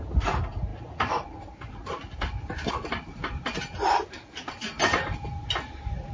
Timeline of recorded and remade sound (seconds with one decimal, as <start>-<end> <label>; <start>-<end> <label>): 0.0-6.1 recorded